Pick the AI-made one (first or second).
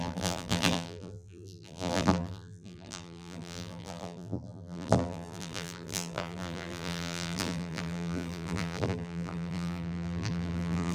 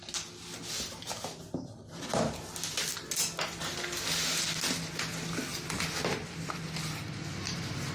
first